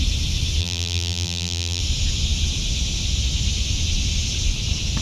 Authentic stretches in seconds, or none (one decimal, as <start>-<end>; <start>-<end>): 0.0-0.6; 1.8-5.0